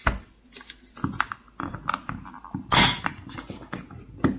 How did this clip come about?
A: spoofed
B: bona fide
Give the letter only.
B